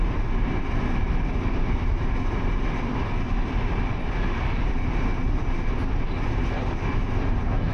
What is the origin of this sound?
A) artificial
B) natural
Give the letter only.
B